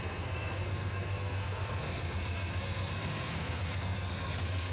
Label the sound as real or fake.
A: fake